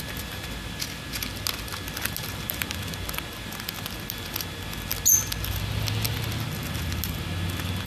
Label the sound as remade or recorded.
recorded